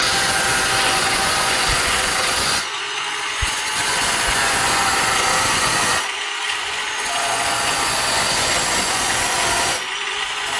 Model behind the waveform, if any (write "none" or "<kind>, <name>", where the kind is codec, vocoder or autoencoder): vocoder, Vocos